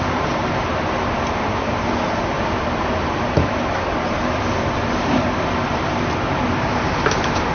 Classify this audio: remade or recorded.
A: remade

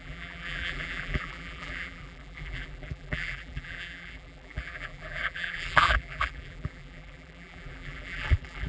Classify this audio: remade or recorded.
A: remade